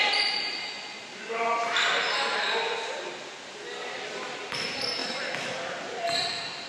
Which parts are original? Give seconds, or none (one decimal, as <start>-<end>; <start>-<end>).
0.0-6.7